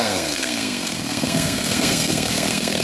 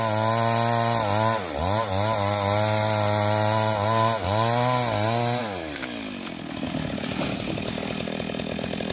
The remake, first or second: first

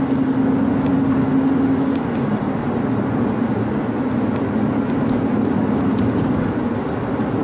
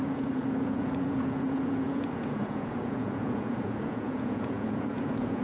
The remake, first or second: second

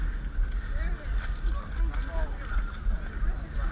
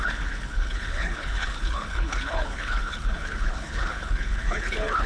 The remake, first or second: second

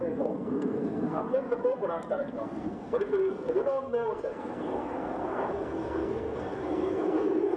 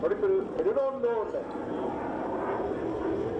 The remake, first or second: first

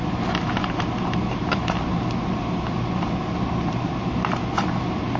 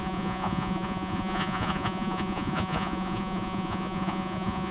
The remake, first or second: second